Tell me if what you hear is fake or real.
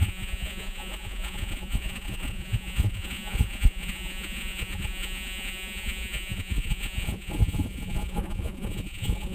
fake